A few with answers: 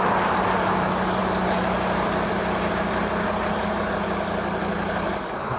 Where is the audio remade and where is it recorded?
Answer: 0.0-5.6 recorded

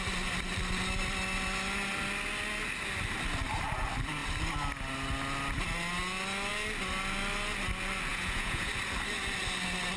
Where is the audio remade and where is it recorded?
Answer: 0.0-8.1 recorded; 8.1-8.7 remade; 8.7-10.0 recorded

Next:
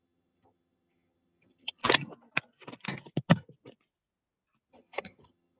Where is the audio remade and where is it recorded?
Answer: 0.0-1.8 remade; 1.8-4.7 recorded; 4.7-5.6 remade

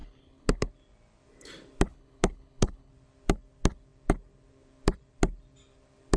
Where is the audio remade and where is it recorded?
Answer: 0.0-0.7 remade; 0.7-1.9 recorded; 1.9-2.9 remade; 2.9-6.2 recorded